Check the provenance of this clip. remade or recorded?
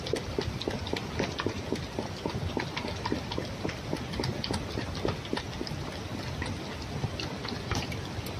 recorded